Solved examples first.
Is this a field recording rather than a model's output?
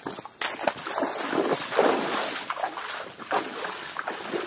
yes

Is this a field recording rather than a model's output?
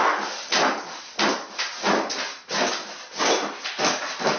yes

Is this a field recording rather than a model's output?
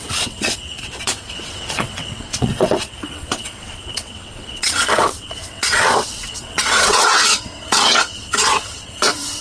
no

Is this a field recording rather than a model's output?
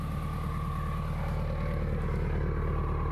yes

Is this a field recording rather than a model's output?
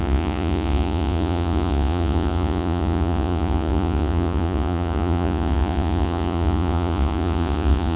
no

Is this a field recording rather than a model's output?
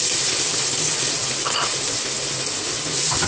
yes